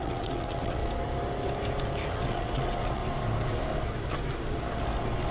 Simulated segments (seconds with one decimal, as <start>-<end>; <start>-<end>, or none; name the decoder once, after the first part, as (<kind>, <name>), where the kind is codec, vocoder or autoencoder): 0.0-0.8 (vocoder, WaveNeXt); 2.1-3.0